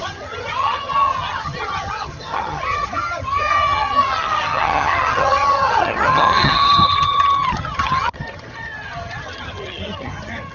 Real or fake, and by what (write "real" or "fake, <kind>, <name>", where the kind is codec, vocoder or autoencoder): fake, vocoder, HiFi-GAN